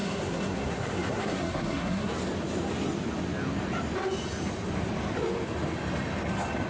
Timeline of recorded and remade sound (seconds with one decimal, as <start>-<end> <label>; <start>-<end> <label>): 0.0-2.1 remade; 2.1-6.7 recorded